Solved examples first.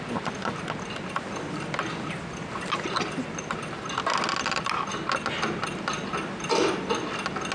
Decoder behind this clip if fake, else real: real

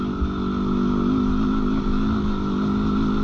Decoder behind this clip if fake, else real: real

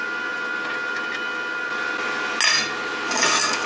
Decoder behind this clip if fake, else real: real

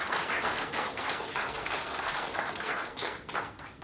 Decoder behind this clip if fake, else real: fake, codec, SNAC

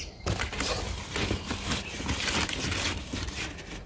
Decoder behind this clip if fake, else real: real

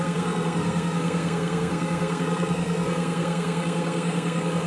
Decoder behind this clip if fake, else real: fake, codec, SNAC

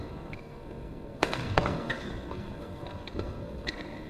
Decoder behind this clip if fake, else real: fake, codec, SNAC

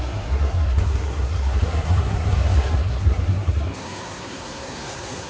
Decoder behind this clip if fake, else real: fake, codec, SNAC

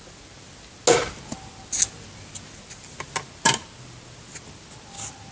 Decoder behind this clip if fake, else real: real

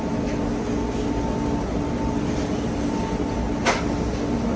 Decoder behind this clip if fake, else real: real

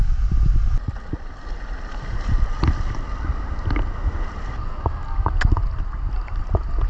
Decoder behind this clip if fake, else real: real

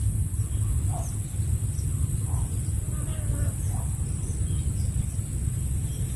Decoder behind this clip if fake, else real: real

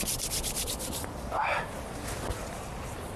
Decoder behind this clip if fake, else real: real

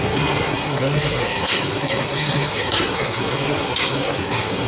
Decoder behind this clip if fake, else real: fake, codec, SNAC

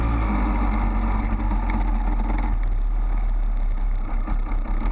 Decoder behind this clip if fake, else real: real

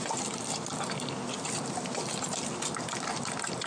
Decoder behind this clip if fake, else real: real